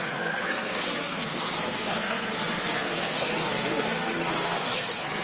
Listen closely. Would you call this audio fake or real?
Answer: fake